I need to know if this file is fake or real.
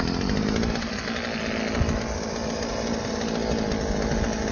real